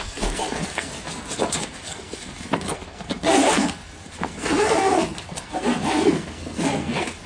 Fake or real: fake